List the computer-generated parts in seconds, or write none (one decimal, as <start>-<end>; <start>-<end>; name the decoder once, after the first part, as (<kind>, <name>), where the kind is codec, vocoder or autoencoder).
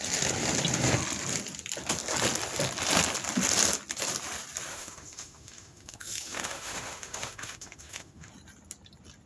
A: 4.7-8.3 (autoencoder, DAC-VAE)